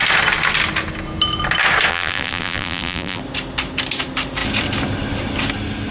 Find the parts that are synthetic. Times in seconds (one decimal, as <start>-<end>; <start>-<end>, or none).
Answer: 1.9-3.2